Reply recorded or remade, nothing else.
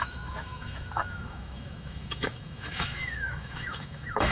remade